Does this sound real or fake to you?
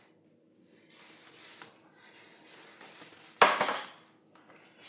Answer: real